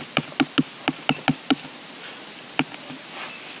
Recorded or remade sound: recorded